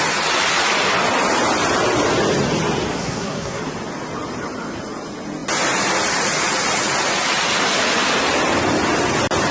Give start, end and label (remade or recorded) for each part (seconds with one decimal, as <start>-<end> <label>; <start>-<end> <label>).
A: 0.0-2.9 recorded; 2.9-3.6 remade; 3.6-9.5 recorded